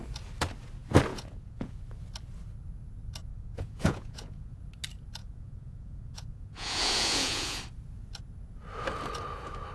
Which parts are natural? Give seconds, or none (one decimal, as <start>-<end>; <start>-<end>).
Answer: 0.0-1.1; 1.8-3.3; 4.6-5.2; 7.6-9.7